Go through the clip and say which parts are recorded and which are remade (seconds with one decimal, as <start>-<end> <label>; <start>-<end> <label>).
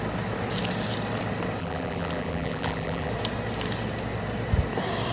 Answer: 0.0-1.6 recorded; 1.6-3.1 remade; 3.1-5.1 recorded